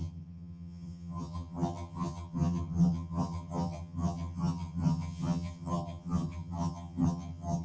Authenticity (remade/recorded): remade